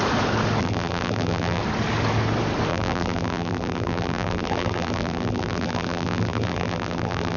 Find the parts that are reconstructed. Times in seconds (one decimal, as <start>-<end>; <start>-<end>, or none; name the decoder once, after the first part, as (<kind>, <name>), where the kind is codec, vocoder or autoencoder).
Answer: 0.6-1.6 (vocoder, BigVGAN v2); 2.7-7.4